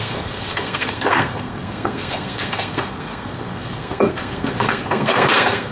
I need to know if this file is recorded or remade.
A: remade